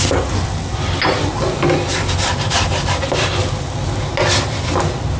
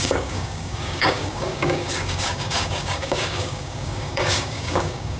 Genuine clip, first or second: first